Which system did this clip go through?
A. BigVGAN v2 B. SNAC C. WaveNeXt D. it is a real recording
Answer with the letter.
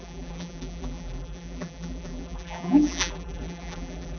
A